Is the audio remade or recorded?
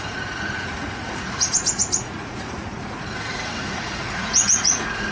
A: remade